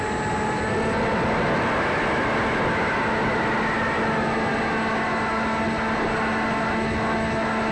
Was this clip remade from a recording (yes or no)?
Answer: no